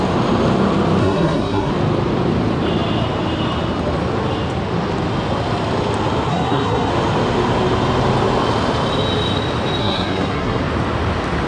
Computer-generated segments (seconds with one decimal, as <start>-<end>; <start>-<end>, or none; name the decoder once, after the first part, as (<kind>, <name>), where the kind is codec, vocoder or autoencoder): 1.0-1.7 (codec, SNAC); 6.3-6.9; 9.8-10.6